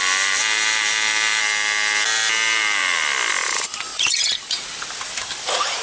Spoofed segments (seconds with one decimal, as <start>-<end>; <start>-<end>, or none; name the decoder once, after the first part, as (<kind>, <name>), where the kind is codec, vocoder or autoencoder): 3.9-4.4 (vocoder, Vocos)